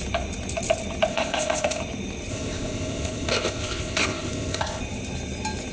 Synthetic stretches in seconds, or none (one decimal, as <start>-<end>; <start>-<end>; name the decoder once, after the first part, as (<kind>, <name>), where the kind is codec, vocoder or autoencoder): 1.1-1.8 (codec, ZipCodec); 2.3-4.8